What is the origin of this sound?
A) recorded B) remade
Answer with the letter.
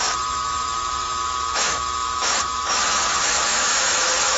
B